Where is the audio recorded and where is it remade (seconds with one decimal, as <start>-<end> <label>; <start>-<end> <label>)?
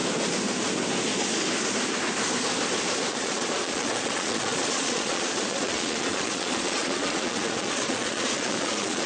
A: 0.0-3.1 recorded; 3.1-9.1 remade